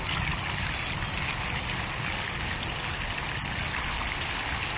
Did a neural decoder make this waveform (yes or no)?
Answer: no